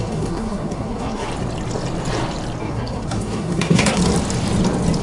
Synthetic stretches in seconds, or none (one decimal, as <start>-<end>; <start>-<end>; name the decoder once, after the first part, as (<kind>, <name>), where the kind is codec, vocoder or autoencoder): 0.0-1.3 (codec, SNAC); 2.6-4.0